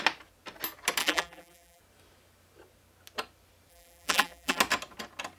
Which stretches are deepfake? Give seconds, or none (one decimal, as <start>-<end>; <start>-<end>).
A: 1.0-1.8; 3.7-4.6